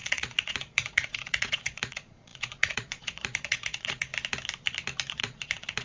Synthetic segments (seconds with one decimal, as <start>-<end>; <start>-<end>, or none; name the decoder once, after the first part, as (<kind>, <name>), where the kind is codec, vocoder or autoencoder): 0.0-4.1 (vocoder, Vocos); 5.1-5.8